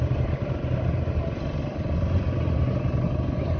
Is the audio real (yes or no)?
yes